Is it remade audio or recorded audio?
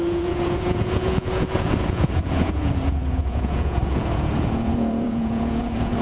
remade